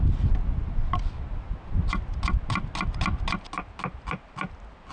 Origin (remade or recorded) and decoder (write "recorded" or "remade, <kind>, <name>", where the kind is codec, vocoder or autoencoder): recorded